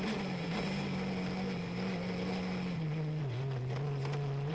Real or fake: real